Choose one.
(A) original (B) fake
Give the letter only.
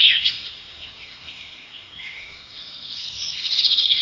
B